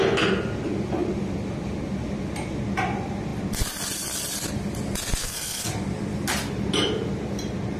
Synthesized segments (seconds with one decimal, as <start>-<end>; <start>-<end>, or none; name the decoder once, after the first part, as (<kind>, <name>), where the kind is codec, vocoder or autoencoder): 5.2-5.7 (codec, SNAC)